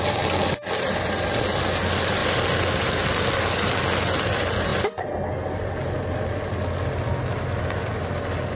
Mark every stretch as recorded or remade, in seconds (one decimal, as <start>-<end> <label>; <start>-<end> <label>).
0.0-8.5 recorded